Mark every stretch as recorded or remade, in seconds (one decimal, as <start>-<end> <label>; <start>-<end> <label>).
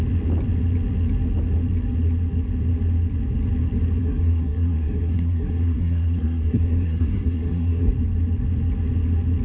0.0-4.0 recorded; 4.0-7.9 remade; 7.9-9.4 recorded